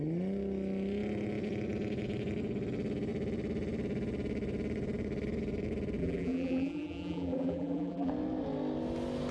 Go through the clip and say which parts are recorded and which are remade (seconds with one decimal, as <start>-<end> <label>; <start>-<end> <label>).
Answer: 0.0-6.0 recorded; 6.0-8.1 remade; 8.1-9.3 recorded